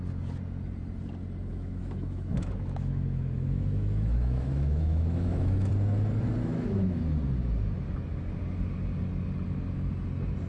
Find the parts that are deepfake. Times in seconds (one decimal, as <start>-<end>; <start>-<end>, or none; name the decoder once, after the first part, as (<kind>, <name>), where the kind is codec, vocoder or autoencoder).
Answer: 1.5-5.7 (autoencoder, DAC-VAE); 6.4-7.0